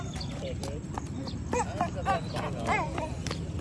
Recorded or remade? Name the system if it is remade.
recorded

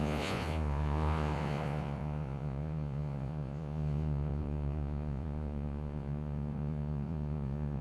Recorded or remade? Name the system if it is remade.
remade, vocoder, Vocos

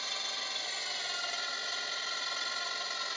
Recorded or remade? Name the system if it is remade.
recorded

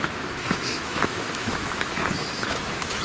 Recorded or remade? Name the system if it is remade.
remade, autoencoder, DAC-VAE